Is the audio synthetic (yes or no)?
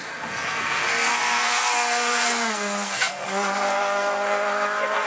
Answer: yes